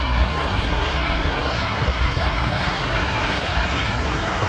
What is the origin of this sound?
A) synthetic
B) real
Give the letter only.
A